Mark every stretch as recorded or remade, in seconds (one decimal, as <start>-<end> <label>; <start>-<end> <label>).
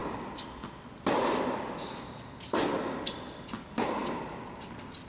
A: 0.0-5.1 recorded